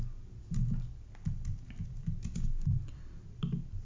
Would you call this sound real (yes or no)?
yes